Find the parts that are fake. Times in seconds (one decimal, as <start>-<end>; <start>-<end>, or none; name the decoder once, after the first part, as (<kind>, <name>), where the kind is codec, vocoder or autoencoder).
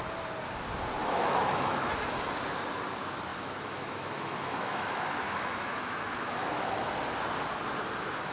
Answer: 1.0-1.9 (autoencoder, DAC-VAE); 3.3-6.9